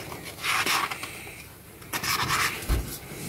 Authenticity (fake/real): real